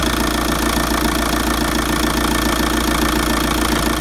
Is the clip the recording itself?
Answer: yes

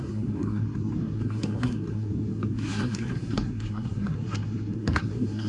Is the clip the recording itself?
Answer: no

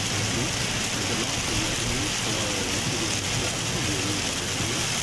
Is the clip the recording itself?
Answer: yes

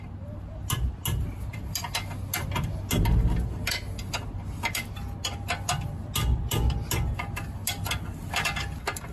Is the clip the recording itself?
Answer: yes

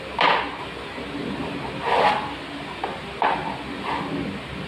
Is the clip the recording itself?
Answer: yes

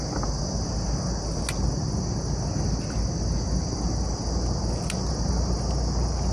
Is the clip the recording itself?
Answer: yes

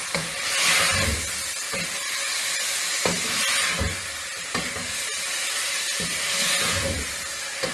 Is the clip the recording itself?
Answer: yes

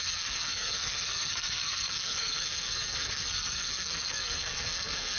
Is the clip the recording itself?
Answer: no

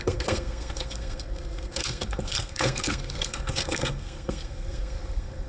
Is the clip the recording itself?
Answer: no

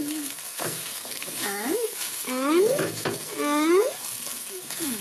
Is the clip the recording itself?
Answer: no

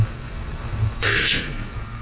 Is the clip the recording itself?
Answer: no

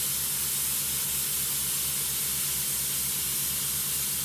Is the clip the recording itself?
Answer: yes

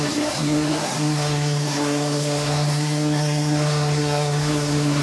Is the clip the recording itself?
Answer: no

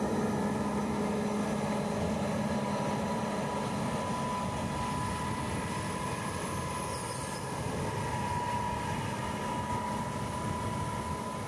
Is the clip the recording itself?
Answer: yes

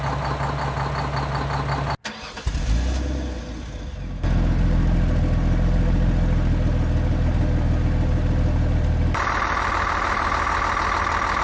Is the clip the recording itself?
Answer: yes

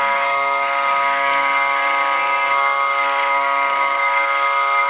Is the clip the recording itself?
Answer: no